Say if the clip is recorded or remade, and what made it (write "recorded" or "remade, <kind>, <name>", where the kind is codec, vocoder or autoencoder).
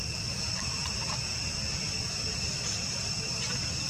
recorded